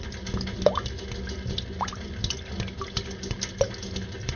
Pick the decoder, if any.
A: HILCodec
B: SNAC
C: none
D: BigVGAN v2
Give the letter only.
C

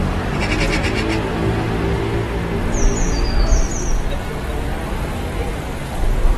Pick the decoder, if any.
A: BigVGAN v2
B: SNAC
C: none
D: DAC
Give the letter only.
C